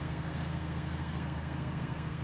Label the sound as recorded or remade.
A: remade